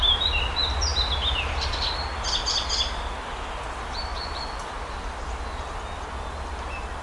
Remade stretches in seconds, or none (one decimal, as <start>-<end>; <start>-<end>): none